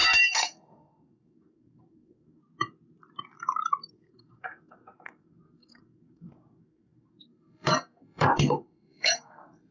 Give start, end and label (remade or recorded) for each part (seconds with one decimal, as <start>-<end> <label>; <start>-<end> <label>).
0.0-2.4 remade; 2.4-3.9 recorded; 3.9-9.7 remade